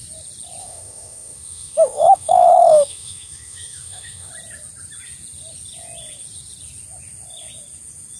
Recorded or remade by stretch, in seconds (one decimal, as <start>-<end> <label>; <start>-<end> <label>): 0.0-0.6 recorded; 0.6-4.3 remade; 4.3-8.2 recorded

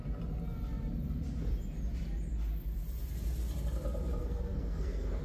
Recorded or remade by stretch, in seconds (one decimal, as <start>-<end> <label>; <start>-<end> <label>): 0.0-4.2 recorded; 4.2-5.2 remade